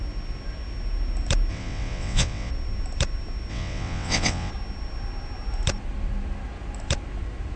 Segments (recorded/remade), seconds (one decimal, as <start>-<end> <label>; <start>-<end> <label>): 0.0-1.5 recorded; 1.5-2.5 remade; 2.5-3.5 recorded; 3.5-4.5 remade; 4.5-7.6 recorded